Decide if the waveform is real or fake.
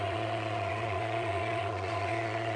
fake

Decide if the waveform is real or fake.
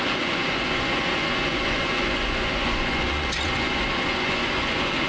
fake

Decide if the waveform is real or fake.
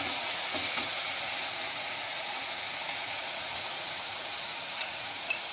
fake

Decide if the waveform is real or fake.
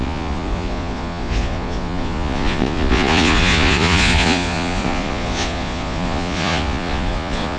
fake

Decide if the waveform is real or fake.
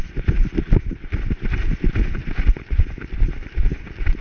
real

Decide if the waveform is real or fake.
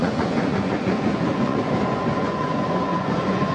fake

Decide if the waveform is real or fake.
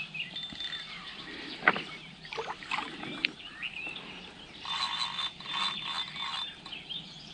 real